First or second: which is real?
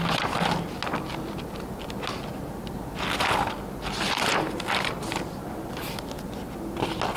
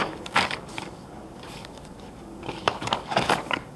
first